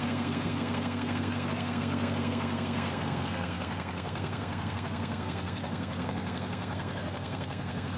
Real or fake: fake